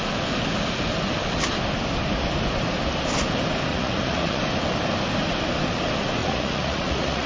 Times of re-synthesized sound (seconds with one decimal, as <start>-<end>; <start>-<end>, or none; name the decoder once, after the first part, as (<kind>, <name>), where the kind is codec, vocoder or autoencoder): 3.7-4.4 (vocoder, Vocos); 6.2-7.3